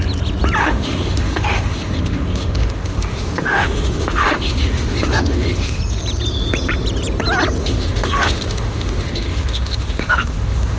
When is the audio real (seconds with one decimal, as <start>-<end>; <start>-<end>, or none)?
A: 0.0-0.6; 5.8-7.6